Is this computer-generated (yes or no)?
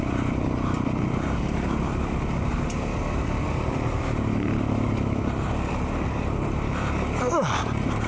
no